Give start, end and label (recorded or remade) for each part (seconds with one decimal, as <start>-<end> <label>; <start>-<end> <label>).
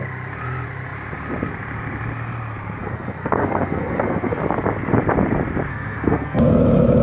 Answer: 0.0-2.8 recorded; 2.8-4.4 remade; 4.4-5.7 recorded; 5.7-6.6 remade; 6.6-7.0 recorded